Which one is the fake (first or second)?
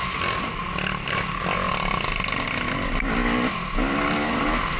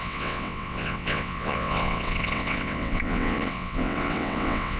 second